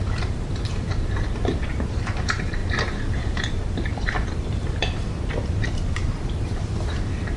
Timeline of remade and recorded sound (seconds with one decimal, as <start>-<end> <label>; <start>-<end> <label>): 0.0-7.4 remade